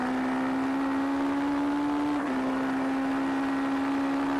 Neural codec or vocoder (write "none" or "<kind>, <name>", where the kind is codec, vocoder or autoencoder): none